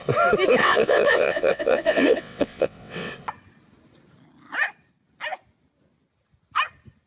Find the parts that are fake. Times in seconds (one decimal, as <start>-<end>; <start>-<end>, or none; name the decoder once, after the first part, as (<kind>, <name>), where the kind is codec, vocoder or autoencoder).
0.6-3.1 (vocoder, WaveNeXt)

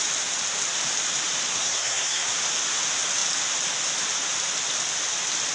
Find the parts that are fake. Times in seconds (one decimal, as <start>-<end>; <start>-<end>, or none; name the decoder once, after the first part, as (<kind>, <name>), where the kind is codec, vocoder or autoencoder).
1.5-2.3 (codec, SNAC)

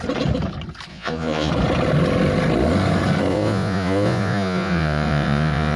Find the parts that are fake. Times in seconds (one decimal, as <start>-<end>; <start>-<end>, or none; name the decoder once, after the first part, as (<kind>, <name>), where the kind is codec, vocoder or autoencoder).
0.9-1.5 (vocoder, Vocos); 3.3-5.8